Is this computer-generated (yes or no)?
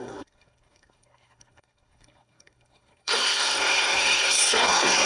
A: yes